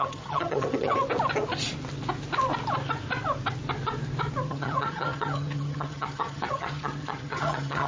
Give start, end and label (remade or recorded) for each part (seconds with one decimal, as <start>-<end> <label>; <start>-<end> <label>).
0.0-0.9 remade; 0.9-4.5 recorded; 4.5-7.9 remade